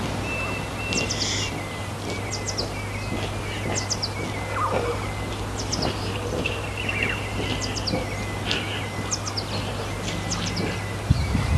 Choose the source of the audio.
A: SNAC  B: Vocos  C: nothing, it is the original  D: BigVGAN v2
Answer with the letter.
C